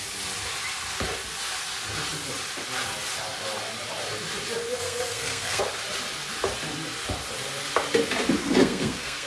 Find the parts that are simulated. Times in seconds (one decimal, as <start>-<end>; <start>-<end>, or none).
4.8-5.6; 8.4-9.3